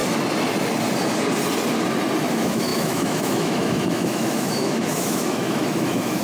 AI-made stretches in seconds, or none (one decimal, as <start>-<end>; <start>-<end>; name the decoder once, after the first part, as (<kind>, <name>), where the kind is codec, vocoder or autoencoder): 2.3-6.2 (autoencoder, DAC-VAE)